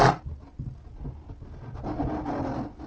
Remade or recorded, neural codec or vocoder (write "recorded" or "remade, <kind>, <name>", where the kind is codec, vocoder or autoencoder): recorded